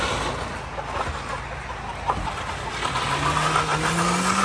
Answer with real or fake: real